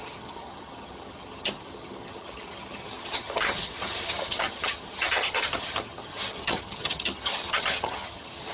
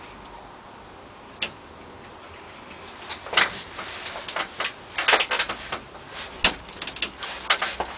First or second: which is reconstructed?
first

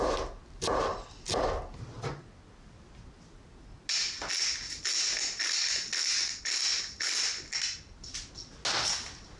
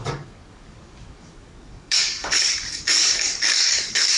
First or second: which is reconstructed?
second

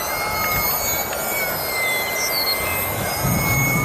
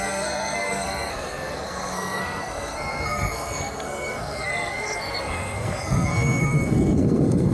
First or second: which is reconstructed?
second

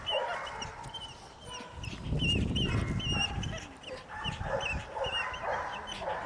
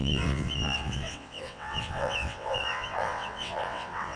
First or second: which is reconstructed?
second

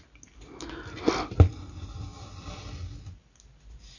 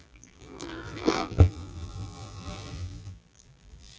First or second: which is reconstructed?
second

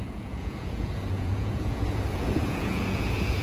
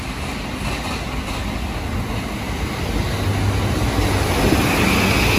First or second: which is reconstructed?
first